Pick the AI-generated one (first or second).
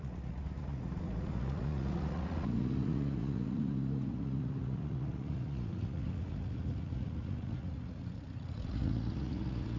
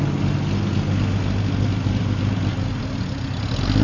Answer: first